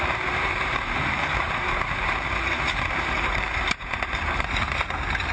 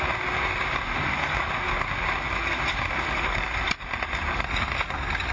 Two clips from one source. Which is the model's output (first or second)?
first